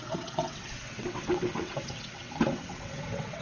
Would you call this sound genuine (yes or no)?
no